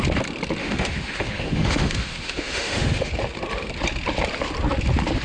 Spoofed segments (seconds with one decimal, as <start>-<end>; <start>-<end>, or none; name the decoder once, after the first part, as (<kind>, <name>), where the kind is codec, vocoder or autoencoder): 0.6-3.1 (autoencoder, DAC-VAE)